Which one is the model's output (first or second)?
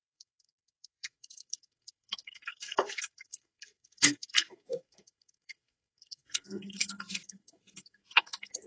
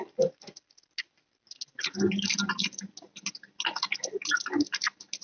first